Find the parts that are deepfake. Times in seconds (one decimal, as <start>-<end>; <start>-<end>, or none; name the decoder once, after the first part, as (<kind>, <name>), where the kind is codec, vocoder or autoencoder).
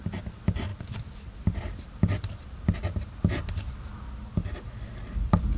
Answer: none